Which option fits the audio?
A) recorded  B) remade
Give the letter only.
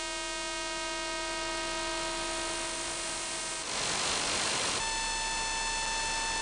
A